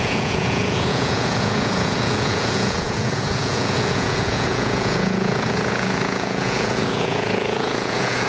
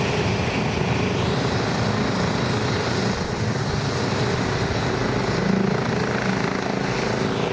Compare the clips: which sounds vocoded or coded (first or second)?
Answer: first